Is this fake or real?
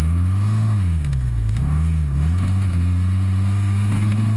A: fake